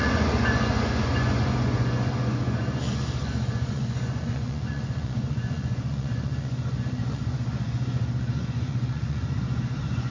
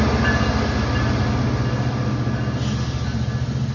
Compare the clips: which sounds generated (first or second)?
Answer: first